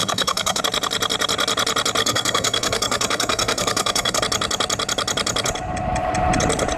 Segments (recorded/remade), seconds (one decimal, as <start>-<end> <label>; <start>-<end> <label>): 0.0-0.6 remade; 0.6-2.0 recorded; 2.0-4.2 remade; 4.2-6.8 recorded